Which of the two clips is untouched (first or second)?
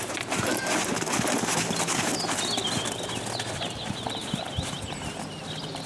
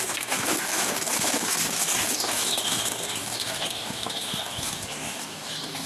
first